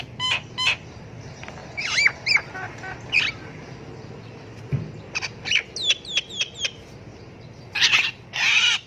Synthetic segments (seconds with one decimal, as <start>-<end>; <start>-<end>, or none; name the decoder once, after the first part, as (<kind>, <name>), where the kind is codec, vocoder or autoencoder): none